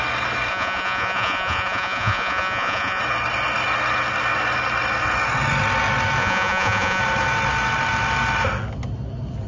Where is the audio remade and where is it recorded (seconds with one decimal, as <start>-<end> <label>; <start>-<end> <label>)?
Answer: 0.0-0.5 recorded; 0.5-3.0 remade; 3.0-6.2 recorded; 6.2-7.0 remade; 7.0-9.5 recorded